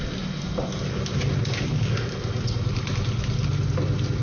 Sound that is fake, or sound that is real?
real